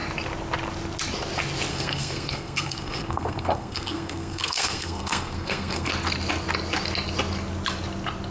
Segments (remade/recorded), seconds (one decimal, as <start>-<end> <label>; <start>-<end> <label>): 0.0-1.7 recorded; 1.7-5.9 remade; 5.9-8.3 recorded